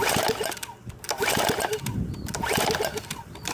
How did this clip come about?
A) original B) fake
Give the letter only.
A